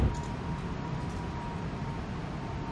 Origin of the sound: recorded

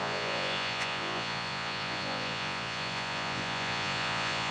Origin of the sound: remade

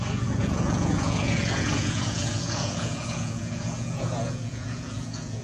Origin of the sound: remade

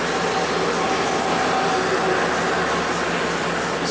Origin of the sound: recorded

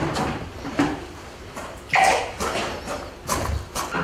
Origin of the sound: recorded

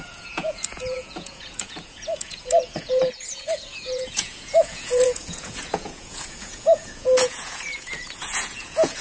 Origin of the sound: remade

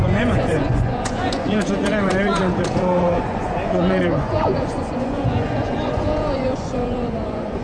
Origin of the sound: remade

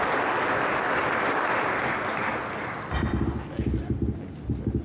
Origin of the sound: recorded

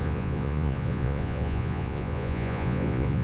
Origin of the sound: remade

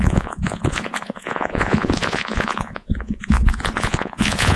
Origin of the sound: remade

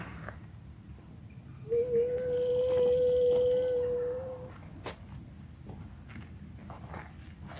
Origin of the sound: recorded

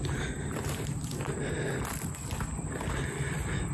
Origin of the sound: recorded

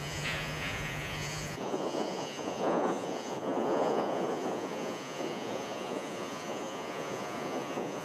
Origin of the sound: remade